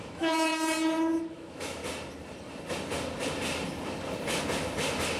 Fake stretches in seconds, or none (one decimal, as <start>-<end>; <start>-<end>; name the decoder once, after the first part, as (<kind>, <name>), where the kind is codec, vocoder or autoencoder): 0.0-0.5 (autoencoder, DAC-VAE); 1.3-1.8